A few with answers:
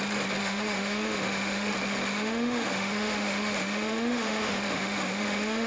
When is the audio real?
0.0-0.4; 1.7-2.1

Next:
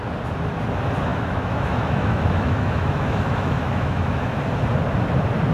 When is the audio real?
0.0-1.1; 4.4-5.5